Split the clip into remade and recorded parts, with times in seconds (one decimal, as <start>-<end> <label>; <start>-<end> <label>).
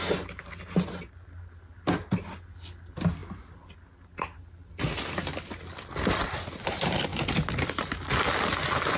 0.0-9.0 recorded